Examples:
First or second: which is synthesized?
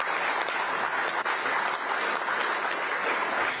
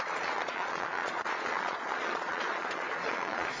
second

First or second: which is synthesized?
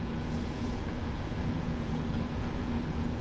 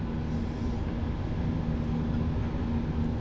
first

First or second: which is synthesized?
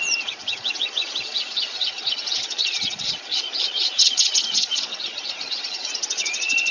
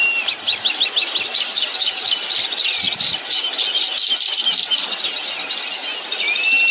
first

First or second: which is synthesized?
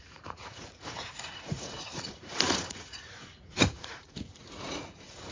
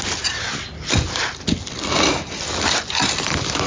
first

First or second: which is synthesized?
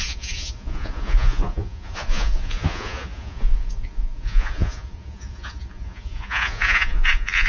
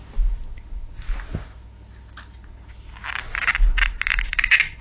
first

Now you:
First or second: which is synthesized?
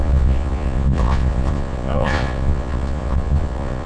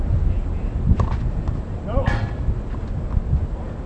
first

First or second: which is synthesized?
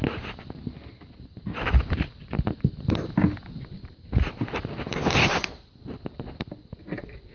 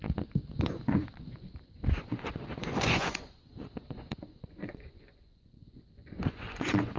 second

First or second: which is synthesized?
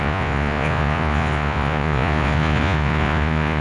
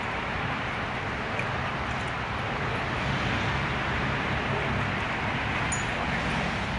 first